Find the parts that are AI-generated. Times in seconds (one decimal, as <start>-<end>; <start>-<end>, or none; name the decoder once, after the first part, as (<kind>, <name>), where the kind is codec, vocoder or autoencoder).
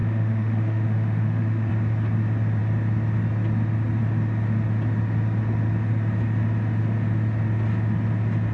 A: 0.0-1.7 (autoencoder, DAC-VAE)